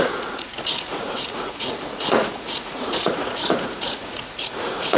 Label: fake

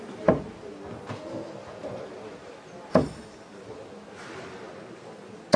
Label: real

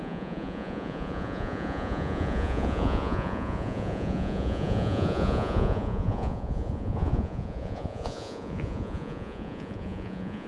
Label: fake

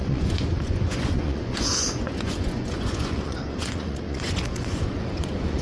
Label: fake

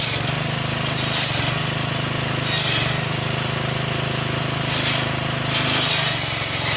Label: real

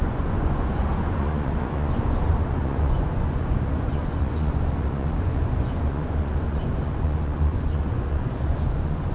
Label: fake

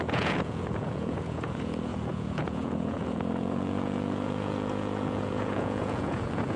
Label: fake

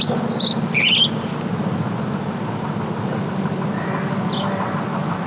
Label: real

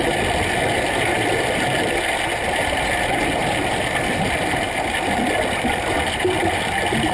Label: real